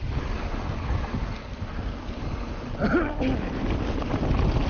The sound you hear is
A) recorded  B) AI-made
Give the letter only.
A